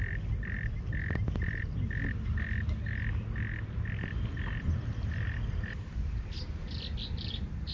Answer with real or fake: real